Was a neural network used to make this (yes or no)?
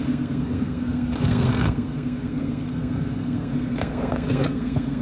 yes